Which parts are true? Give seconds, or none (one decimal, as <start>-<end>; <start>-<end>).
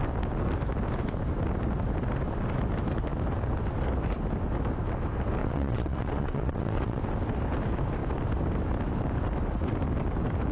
0.0-5.4; 7.0-10.5